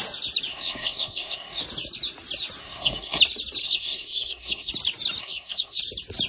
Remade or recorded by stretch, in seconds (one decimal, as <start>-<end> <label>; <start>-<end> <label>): 0.0-0.5 recorded; 0.5-1.6 remade; 1.6-2.6 recorded; 2.6-3.2 remade; 3.2-3.6 recorded; 3.6-4.7 remade; 4.7-5.2 recorded; 5.2-5.8 remade; 5.8-6.3 recorded